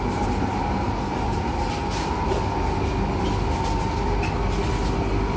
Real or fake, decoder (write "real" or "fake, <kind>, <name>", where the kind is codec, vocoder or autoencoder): real